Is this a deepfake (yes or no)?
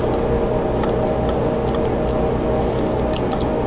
no